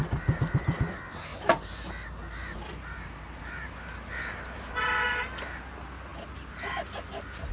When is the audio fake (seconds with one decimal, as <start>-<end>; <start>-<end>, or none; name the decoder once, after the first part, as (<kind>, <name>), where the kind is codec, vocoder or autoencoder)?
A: 1.3-1.9 (vocoder, BigVGAN v2); 2.4-4.6